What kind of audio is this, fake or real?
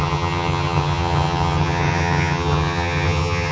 fake